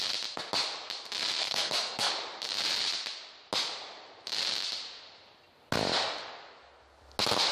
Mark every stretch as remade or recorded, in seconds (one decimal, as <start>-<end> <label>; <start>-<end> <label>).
0.0-1.4 recorded; 1.4-2.1 remade; 2.1-7.5 recorded